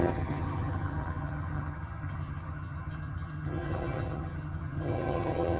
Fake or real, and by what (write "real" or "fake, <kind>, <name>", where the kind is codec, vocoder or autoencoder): fake, vocoder, HiFi-GAN